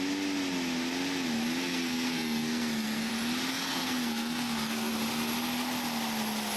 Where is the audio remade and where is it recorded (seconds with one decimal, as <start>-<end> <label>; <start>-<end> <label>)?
0.0-1.6 recorded; 1.6-3.1 remade; 3.1-3.5 recorded; 3.5-4.9 remade; 4.9-6.6 recorded